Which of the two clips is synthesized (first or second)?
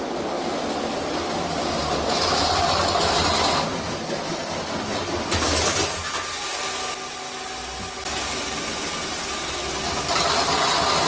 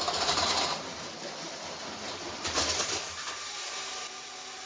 second